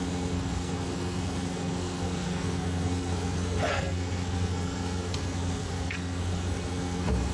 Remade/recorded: remade